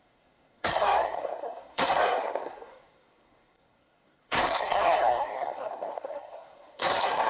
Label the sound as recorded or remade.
remade